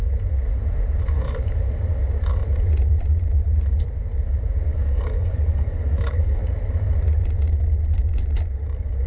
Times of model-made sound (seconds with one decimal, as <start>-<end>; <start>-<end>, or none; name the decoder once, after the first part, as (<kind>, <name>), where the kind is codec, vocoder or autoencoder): 4.7-6.4 (codec, DAC)